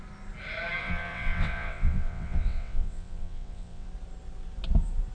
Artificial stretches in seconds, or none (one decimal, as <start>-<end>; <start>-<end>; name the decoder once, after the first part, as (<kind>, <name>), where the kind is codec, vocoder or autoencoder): 0.8-3.9 (vocoder, WaveNeXt)